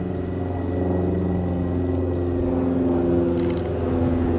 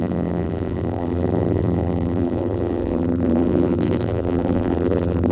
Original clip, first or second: first